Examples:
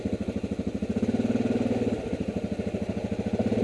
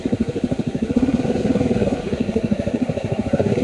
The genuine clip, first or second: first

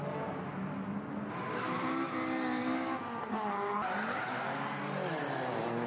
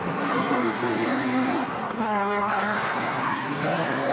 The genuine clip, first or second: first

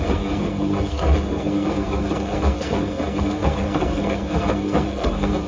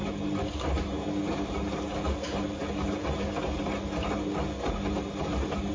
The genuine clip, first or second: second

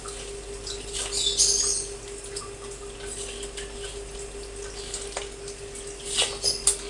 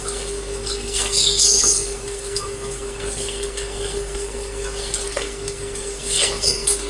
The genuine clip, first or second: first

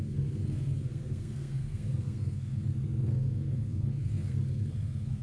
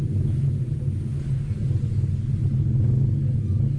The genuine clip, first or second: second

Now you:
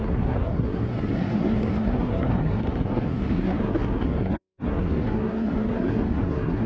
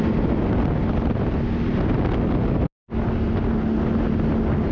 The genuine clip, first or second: second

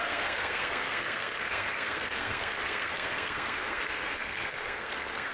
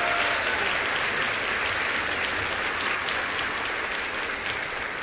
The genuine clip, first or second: second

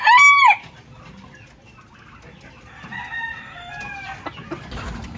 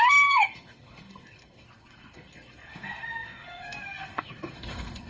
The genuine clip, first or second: first